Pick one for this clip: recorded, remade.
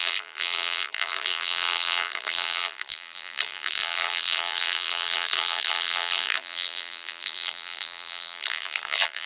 remade